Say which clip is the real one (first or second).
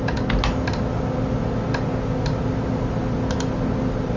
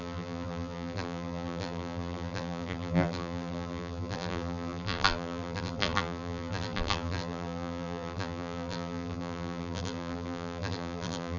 first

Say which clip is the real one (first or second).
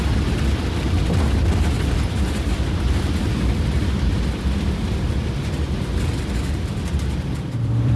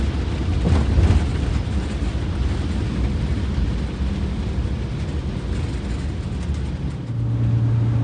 second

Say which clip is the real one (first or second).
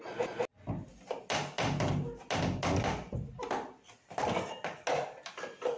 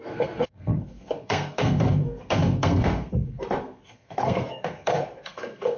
first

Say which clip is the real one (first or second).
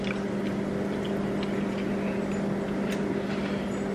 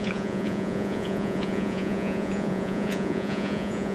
first